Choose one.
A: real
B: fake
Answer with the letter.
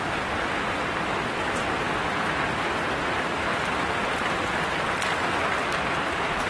A